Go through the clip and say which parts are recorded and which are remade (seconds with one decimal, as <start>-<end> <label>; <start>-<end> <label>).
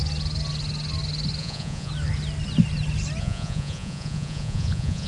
0.0-1.4 recorded; 1.4-1.9 remade; 1.9-3.2 recorded; 3.2-5.1 remade